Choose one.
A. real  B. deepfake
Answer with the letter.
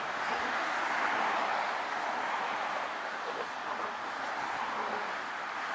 A